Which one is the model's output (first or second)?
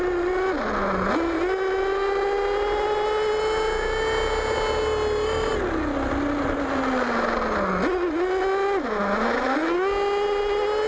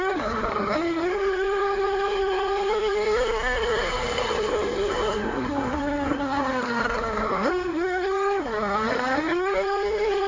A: second